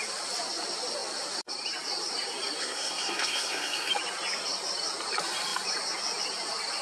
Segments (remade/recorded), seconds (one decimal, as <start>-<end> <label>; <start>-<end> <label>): 0.0-2.6 recorded; 2.6-3.9 remade; 3.9-6.8 recorded

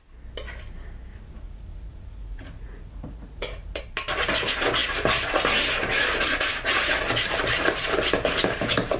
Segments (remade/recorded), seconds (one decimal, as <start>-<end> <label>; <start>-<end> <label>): 0.0-1.1 recorded; 1.1-3.8 remade; 3.8-9.0 recorded

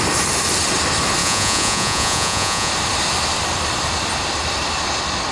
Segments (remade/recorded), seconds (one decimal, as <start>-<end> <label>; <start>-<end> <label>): 0.0-1.2 recorded; 1.2-2.7 remade; 2.7-5.3 recorded

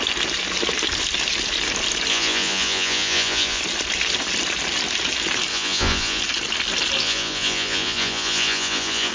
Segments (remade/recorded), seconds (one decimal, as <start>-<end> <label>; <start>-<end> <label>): 0.0-2.1 recorded; 2.1-3.6 remade; 3.6-5.5 recorded; 5.5-6.2 remade; 6.2-7.0 recorded; 7.0-9.1 remade

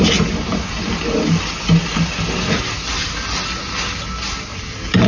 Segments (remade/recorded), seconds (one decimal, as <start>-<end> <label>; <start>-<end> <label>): 0.0-4.5 recorded; 4.5-5.1 remade

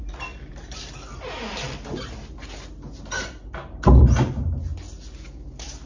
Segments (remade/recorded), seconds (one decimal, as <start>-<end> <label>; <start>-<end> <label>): 0.0-5.9 recorded

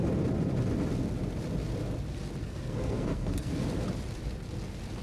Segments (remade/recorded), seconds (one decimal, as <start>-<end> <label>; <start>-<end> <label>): 0.0-2.4 recorded; 2.4-3.5 remade; 3.5-5.0 recorded